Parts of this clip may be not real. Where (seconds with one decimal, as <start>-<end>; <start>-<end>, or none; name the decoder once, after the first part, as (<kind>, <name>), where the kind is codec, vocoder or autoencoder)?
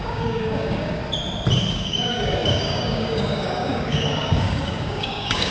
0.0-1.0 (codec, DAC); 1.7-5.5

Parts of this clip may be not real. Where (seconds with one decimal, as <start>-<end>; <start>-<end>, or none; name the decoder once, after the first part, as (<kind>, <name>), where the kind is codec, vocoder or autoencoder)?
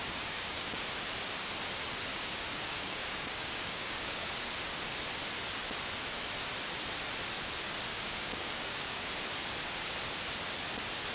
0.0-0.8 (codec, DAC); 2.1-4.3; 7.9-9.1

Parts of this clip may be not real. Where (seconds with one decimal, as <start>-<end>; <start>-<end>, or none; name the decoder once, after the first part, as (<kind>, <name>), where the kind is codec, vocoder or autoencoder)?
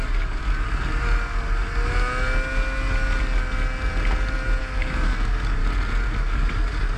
0.0-0.4 (codec, DAC); 4.6-5.6; 6.2-7.0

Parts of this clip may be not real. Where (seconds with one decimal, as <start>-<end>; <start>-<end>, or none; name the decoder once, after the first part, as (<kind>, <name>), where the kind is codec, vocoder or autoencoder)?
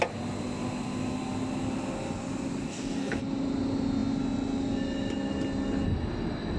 2.6-3.2 (codec, DAC)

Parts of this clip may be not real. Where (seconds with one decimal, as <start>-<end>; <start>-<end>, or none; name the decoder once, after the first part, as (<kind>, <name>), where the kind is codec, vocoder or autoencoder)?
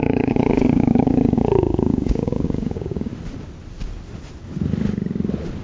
0.0-3.1 (codec, DAC)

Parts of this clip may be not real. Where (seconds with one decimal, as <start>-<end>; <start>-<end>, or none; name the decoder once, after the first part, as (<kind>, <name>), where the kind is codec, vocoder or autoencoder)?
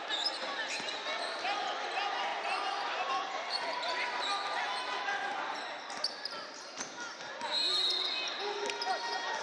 none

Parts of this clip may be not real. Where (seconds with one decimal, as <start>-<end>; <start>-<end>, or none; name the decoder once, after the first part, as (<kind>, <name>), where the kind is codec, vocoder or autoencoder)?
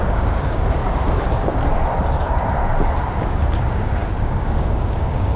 0.0-0.8 (codec, DAC); 3.2-5.4